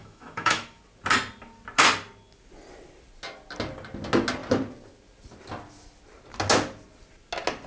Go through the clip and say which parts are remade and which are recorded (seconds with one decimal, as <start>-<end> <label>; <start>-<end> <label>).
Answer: 0.0-0.8 remade; 0.8-7.7 recorded